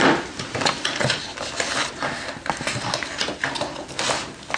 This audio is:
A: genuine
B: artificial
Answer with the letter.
A